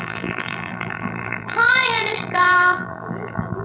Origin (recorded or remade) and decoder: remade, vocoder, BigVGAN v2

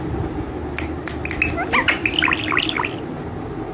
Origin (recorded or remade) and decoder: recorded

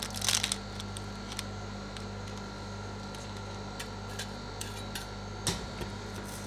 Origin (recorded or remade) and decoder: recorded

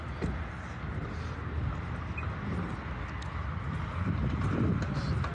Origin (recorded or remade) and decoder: recorded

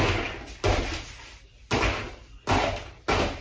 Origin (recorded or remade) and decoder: recorded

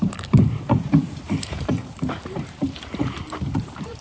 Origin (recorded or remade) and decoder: remade, vocoder, BigVGAN v2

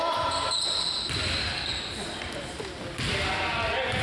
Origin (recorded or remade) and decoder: recorded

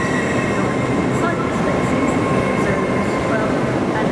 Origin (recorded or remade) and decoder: recorded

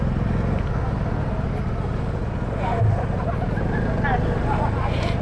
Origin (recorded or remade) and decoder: recorded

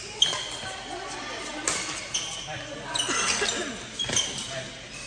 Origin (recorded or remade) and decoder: recorded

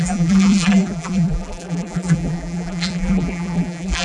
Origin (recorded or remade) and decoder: remade, vocoder, BigVGAN v2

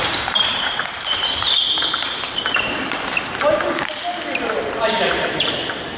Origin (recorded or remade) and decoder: remade, vocoder, BigVGAN v2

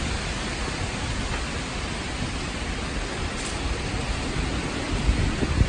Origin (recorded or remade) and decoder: recorded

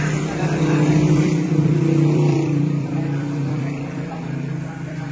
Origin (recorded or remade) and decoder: remade, vocoder, BigVGAN v2